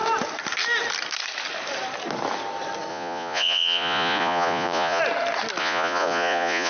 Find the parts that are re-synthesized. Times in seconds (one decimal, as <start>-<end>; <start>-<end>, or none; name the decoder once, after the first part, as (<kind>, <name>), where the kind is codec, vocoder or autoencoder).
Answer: 2.9-5.0 (vocoder, Vocos); 5.6-6.7